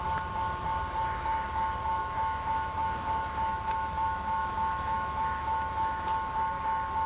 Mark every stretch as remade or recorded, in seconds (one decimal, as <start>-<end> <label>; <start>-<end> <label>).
0.0-2.0 recorded; 2.0-6.3 remade; 6.3-7.1 recorded